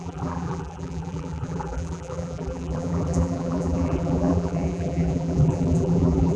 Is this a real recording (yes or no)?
no